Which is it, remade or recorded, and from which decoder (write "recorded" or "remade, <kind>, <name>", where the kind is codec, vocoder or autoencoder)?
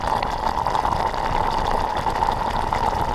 recorded